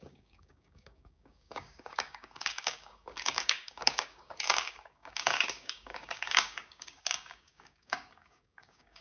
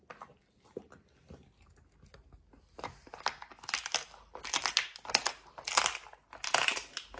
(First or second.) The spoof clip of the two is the first